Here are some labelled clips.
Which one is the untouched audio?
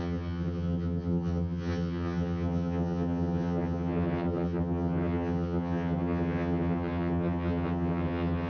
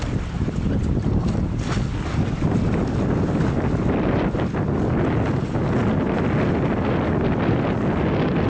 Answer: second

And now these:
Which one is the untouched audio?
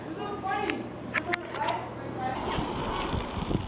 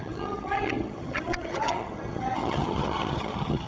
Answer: first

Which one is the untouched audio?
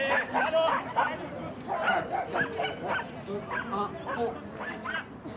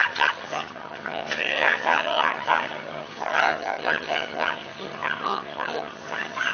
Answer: first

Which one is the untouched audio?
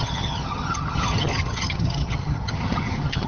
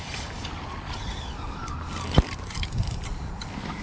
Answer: second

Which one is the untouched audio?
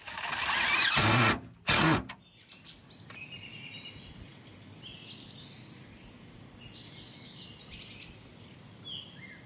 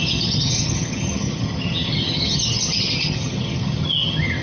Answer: first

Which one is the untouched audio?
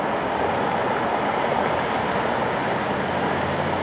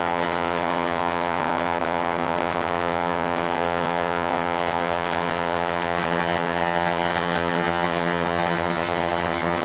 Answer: first